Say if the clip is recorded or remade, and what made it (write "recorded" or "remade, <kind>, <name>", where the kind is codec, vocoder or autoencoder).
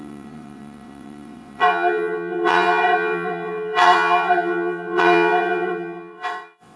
remade, vocoder, WaveNeXt